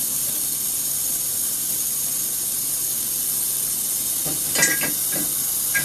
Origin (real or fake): real